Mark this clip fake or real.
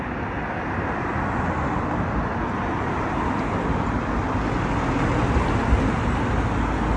real